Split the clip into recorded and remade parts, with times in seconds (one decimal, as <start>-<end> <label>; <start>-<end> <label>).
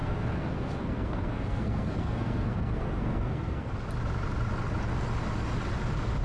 0.0-3.7 remade; 3.7-6.2 recorded